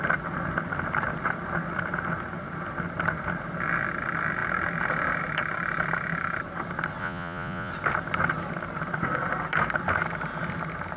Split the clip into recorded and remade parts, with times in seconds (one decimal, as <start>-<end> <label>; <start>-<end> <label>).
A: 0.0-7.0 recorded; 7.0-7.7 remade; 7.7-11.0 recorded